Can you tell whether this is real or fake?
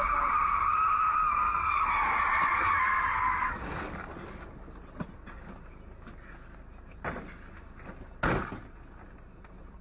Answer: real